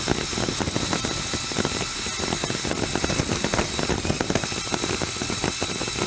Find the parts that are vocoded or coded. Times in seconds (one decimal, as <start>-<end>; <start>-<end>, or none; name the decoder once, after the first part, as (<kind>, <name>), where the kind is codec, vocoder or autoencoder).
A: none